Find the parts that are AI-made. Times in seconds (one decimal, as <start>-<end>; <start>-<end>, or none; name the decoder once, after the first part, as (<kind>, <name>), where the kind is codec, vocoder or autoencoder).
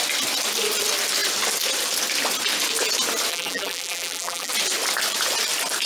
3.3-4.5 (vocoder, BigVGAN v2)